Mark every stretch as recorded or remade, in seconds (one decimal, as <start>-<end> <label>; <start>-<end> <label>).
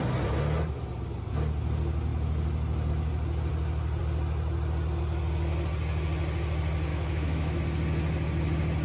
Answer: 0.0-6.9 recorded; 6.9-7.6 remade; 7.6-8.8 recorded